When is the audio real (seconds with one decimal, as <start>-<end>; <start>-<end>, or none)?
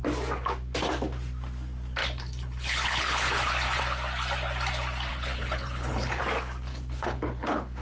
0.0-2.0; 3.8-5.1; 6.2-6.7